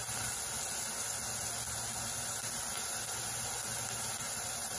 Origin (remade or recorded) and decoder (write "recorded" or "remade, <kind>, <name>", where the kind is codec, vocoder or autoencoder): recorded